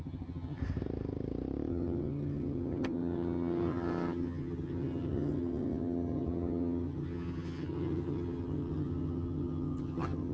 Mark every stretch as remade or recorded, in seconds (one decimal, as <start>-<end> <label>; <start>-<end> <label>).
0.0-0.6 remade; 0.6-1.7 recorded; 1.7-10.3 remade